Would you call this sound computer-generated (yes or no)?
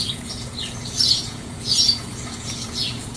yes